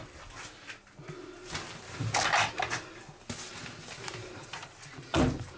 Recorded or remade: recorded